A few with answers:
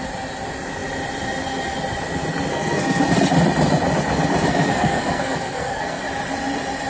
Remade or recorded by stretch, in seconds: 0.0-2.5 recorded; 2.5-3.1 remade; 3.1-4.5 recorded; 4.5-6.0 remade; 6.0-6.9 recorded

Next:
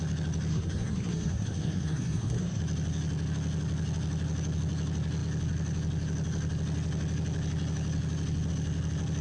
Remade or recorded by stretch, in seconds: 0.0-0.5 recorded; 0.5-2.6 remade; 2.6-9.2 recorded

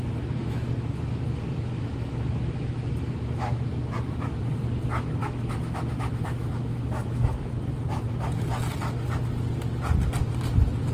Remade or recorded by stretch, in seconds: 0.0-0.4 recorded; 0.4-3.7 remade; 3.7-5.2 recorded; 5.2-7.5 remade; 7.5-10.9 recorded

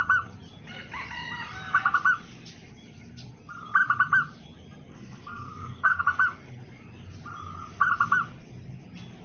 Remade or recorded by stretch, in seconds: 0.0-4.9 recorded; 4.9-6.0 remade; 6.0-9.2 recorded

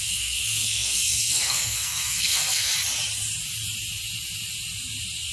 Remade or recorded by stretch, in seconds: 0.0-2.7 remade; 2.7-5.3 recorded

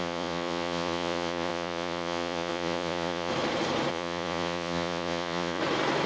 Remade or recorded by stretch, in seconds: 0.0-3.3 remade; 3.3-3.9 recorded; 3.9-5.6 remade; 5.6-6.1 recorded